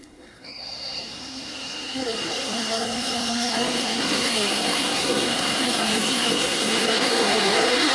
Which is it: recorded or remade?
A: remade